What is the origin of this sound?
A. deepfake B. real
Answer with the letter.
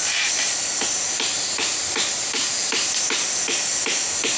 B